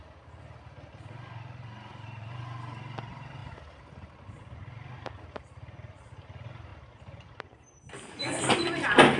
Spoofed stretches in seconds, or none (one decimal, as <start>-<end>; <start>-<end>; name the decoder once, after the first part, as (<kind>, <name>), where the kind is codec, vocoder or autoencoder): 1.9-2.4 (vocoder, BigVGAN v2)